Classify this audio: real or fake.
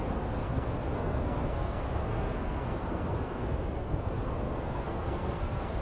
fake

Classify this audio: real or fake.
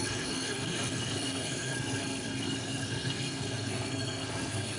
fake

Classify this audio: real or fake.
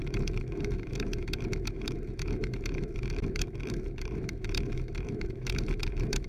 fake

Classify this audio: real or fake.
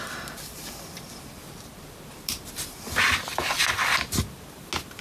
real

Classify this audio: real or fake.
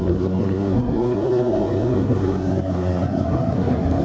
fake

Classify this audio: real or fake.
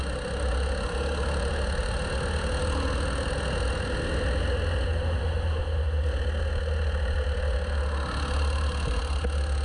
real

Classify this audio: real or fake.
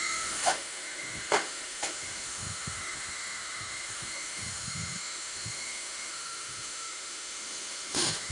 fake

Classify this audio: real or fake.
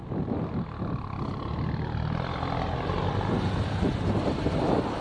real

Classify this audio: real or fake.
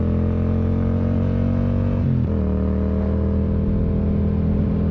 real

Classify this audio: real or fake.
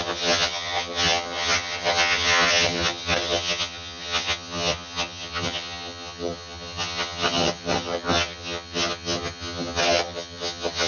fake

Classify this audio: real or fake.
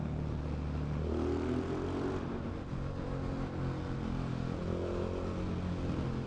real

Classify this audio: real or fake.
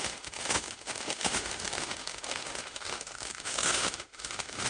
fake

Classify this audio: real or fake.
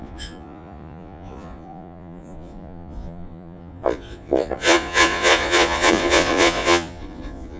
fake